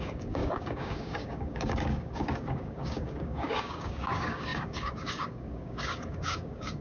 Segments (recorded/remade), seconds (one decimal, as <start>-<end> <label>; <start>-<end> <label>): 0.0-6.8 remade